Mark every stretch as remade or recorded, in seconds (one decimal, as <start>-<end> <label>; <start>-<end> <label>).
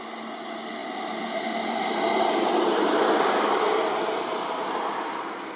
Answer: 0.0-0.8 recorded; 0.8-4.2 remade; 4.2-5.6 recorded